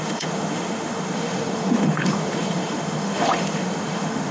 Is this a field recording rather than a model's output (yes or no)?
no